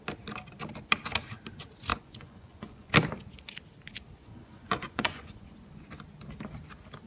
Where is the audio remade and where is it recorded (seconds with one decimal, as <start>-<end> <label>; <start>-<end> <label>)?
0.0-1.9 recorded; 1.9-2.9 remade; 2.9-4.2 recorded; 4.2-5.7 remade; 5.7-7.1 recorded